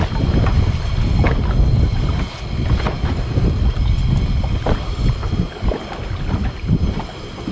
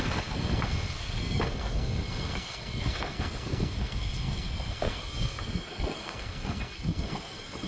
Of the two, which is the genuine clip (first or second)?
first